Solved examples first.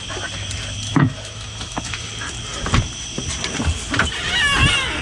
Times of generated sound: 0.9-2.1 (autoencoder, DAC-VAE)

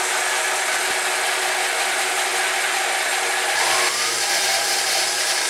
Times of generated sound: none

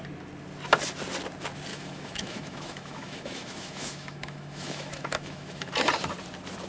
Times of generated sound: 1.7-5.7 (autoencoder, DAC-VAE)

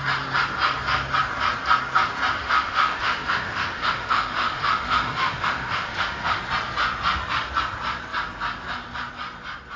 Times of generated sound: 2.4-6.4 (autoencoder, DAC-VAE)

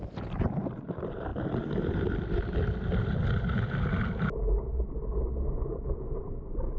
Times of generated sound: none